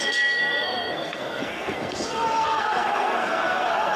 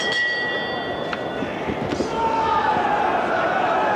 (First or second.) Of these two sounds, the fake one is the first